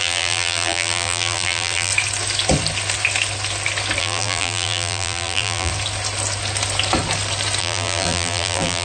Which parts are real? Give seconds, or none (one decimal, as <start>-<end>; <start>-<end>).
1.9-4.0; 5.7-7.6